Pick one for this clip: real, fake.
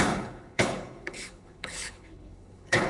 fake